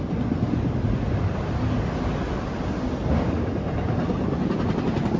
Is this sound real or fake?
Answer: real